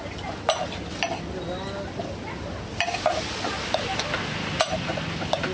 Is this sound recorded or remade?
recorded